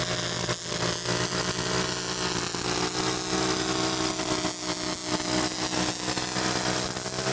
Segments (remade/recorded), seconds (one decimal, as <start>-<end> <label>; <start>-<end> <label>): 0.0-7.3 recorded